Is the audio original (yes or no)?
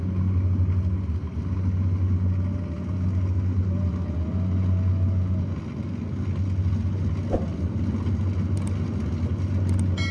yes